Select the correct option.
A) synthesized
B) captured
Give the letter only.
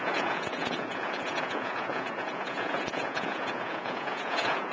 A